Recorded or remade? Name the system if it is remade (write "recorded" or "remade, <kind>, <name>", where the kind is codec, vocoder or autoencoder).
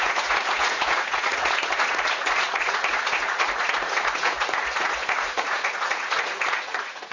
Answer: remade, vocoder, Vocos